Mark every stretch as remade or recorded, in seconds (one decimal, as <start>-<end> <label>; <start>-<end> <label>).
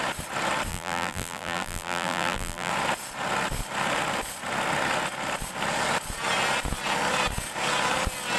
0.0-0.7 recorded; 0.7-2.7 remade; 2.7-8.4 recorded